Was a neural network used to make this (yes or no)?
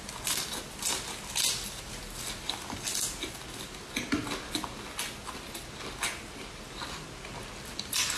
no